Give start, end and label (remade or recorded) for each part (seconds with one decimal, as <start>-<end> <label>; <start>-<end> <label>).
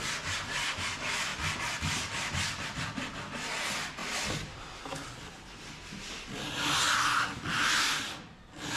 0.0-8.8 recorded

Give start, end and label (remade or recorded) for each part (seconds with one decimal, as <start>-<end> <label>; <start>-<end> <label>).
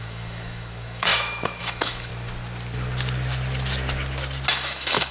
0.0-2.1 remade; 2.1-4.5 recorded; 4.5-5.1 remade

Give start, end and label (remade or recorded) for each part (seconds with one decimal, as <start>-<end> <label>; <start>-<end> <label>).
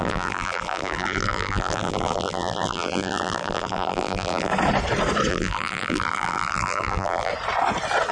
0.0-4.5 remade; 4.5-5.3 recorded; 5.3-7.3 remade; 7.3-8.1 recorded